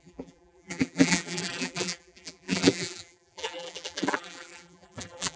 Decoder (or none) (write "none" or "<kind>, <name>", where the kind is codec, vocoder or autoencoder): vocoder, BigVGAN v2